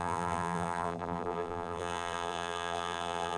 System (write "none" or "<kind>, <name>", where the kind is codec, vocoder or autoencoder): vocoder, BigVGAN v2